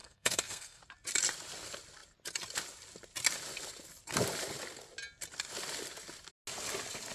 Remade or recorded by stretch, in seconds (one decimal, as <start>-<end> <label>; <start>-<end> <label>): 0.0-0.8 remade; 0.8-7.1 recorded